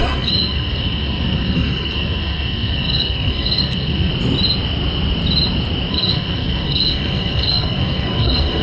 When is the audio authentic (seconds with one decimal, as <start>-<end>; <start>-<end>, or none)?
4.1-5.9